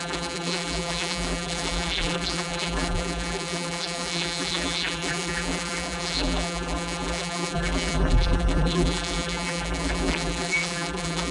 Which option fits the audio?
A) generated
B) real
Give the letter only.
A